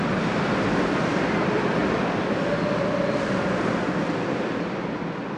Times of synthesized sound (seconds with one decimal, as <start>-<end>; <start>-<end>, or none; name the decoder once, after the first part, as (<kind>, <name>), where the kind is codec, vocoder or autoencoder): none